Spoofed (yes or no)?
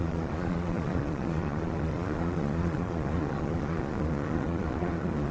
yes